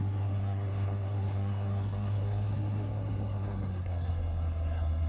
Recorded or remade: remade